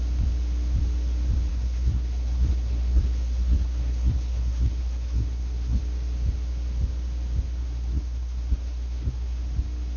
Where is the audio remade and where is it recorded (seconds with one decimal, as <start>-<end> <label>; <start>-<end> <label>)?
0.0-1.5 recorded; 1.5-5.8 remade; 5.8-7.6 recorded; 7.6-9.4 remade; 9.4-10.0 recorded